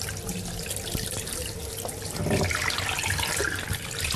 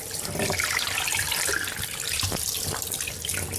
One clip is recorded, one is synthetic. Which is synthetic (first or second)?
second